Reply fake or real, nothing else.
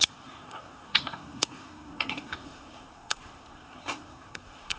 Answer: fake